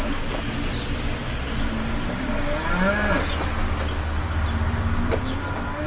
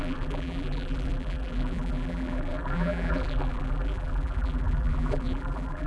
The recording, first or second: first